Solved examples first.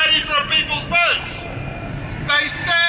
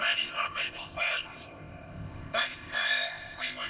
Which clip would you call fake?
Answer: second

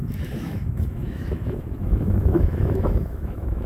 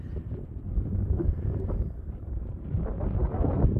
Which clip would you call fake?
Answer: first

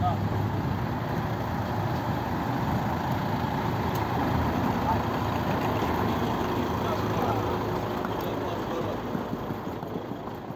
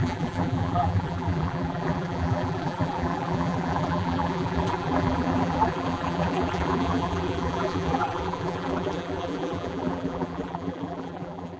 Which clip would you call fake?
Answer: second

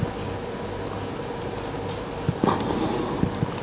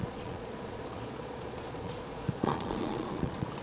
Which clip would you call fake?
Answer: second